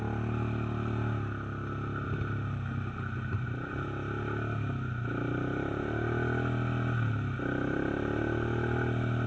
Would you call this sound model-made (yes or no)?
no